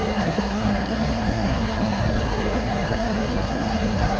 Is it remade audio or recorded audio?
remade